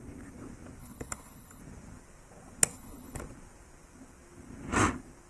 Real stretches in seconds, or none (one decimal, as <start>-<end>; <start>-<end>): 0.0-0.8; 1.6-2.7; 3.2-5.3